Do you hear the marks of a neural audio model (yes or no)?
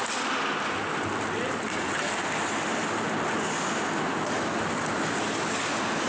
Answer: no